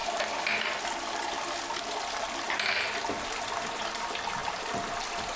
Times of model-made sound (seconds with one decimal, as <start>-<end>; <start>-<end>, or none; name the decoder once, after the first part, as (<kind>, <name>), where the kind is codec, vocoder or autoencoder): none

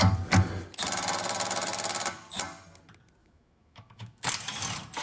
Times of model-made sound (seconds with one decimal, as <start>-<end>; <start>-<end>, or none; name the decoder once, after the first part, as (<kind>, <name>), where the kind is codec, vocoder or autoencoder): 3.2-4.3 (autoencoder, DAC-VAE)

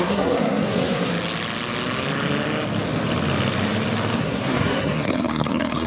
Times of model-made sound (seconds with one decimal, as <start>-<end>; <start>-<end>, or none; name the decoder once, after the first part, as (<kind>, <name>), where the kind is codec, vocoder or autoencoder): 0.0-1.1 (codec, SNAC); 4.2-5.9

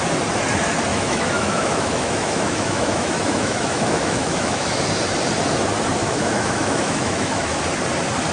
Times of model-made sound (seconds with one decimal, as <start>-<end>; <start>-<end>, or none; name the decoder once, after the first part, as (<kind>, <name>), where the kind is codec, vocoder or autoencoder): 0.9-4.8 (autoencoder, DAC-VAE); 6.0-7.6

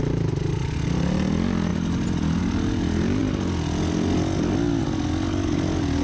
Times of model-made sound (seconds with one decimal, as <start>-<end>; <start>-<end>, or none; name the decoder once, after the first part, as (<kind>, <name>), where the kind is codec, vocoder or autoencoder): none

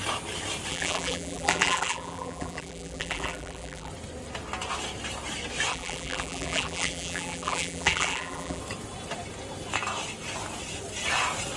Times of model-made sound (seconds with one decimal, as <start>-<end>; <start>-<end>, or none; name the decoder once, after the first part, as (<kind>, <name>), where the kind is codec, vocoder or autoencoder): 0.7-3.9 (vocoder, BigVGAN v2); 5.7-8.6

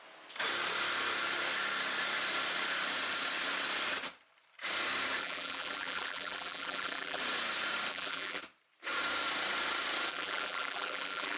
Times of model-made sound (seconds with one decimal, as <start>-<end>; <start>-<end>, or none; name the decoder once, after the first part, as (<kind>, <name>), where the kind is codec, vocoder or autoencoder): 5.2-7.2 (vocoder, BigVGAN v2); 7.9-8.4; 10.1-11.4

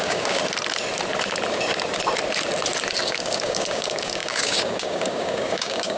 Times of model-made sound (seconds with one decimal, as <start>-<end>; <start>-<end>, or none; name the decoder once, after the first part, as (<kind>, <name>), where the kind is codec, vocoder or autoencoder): 0.0-0.4 (codec, DAC); 3.0-6.0